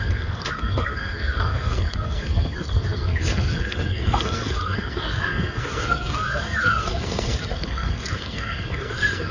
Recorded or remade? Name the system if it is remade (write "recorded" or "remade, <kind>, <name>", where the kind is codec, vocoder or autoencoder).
remade, codec, SNAC